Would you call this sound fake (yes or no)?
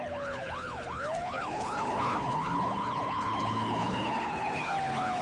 yes